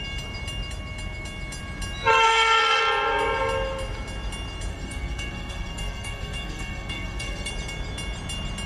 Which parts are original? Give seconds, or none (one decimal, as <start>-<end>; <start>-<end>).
0.0-2.1; 2.8-4.7; 7.5-8.7